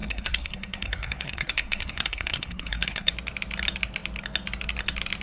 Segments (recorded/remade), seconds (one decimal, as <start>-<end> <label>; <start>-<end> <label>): 0.0-3.1 remade; 3.1-5.2 recorded